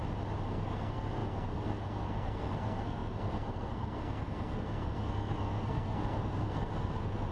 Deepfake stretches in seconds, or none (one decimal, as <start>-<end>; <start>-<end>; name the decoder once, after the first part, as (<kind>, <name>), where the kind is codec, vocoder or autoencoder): 0.5-7.3 (codec, SNAC)